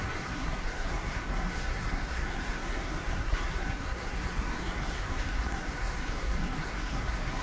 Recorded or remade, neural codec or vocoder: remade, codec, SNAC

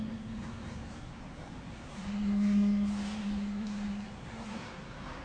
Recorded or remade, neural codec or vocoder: remade, codec, SNAC